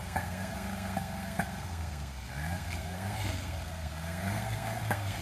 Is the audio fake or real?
fake